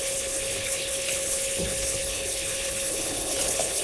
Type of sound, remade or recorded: remade